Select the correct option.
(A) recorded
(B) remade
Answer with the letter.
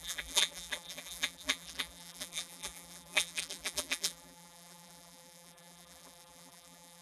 B